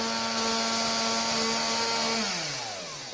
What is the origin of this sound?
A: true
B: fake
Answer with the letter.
A